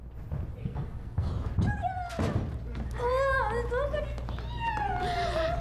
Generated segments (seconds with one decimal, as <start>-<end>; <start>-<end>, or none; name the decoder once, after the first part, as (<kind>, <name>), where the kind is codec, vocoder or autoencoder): 0.6-1.3 (codec, SNAC)